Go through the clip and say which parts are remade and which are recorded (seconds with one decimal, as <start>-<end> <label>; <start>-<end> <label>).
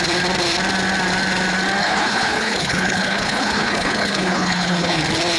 0.0-1.8 recorded; 1.8-5.0 remade; 5.0-5.4 recorded